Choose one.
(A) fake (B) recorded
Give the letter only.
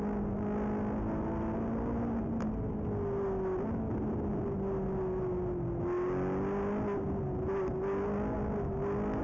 B